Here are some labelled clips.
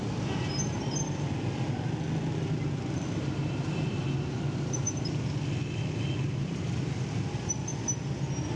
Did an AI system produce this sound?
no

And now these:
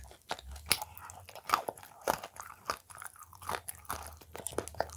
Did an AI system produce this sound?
no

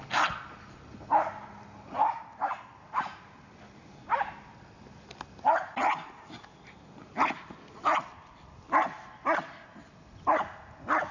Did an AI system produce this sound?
no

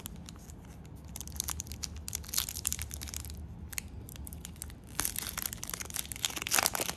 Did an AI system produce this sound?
no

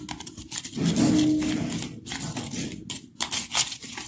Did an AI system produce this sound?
no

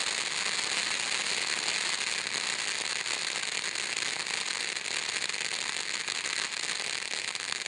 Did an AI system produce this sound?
no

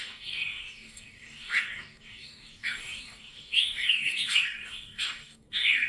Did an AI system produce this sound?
yes